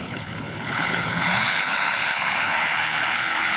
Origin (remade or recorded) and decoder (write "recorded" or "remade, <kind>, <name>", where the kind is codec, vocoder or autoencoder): remade, codec, HILCodec